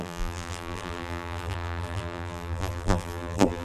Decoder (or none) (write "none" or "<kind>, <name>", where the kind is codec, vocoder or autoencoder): vocoder, BigVGAN v2